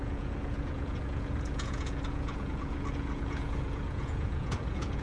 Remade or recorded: remade